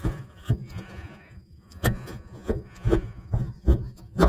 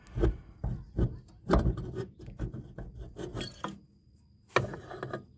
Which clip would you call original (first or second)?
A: second